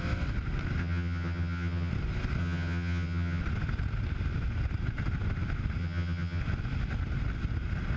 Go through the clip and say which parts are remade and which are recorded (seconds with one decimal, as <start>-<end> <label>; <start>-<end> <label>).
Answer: 0.0-0.8 recorded; 0.8-1.9 remade; 1.9-2.4 recorded; 2.4-3.4 remade; 3.4-5.8 recorded; 5.8-6.4 remade; 6.4-8.0 recorded